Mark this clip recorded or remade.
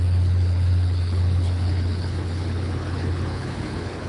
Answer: remade